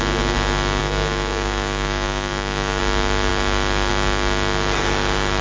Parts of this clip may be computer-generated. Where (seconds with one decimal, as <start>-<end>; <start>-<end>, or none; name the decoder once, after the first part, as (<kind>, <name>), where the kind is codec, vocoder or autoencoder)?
0.8-2.8 (codec, DAC)

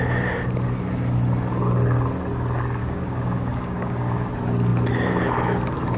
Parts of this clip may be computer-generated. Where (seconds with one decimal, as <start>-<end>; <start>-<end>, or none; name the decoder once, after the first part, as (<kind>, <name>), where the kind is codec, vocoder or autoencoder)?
2.8-4.3 (codec, DAC)

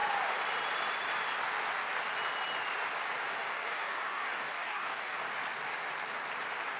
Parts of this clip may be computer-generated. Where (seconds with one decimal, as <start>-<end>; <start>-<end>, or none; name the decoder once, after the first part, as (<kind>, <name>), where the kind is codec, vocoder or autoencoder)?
3.3-5.3 (codec, DAC)

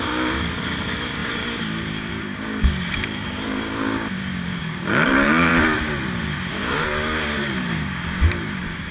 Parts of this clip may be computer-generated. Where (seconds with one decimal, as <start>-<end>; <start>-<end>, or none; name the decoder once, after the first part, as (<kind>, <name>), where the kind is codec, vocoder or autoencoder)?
0.0-5.5 (codec, DAC); 6.5-8.9

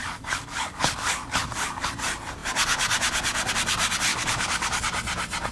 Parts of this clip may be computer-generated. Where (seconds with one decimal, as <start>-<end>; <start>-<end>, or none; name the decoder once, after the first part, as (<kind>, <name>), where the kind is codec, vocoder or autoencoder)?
0.0-1.9 (codec, DAC); 4.1-4.8

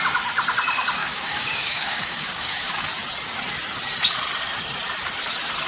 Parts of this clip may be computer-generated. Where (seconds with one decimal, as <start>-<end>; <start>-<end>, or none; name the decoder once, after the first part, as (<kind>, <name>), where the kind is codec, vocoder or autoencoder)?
1.0-2.8 (codec, DAC)

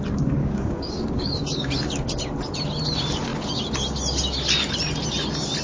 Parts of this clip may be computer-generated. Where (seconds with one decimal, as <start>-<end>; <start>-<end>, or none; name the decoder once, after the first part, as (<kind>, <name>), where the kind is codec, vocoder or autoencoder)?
0.4-1.7 (codec, DAC)